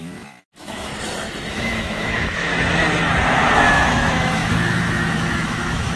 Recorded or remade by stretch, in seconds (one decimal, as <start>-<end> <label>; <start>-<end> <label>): 0.0-0.9 remade; 0.9-1.5 recorded; 1.5-2.5 remade; 2.5-3.7 recorded; 3.7-6.0 remade